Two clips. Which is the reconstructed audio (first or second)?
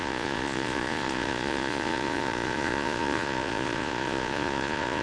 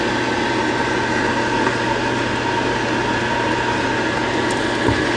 first